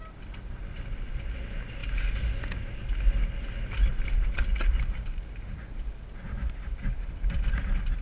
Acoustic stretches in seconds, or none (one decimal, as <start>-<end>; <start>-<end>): 0.0-8.0